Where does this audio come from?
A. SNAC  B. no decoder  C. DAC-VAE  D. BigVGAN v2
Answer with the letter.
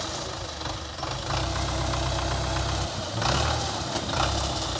B